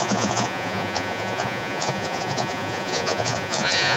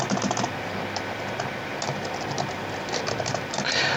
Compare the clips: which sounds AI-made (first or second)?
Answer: first